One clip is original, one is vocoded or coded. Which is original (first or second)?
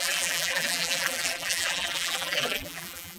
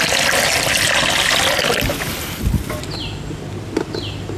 second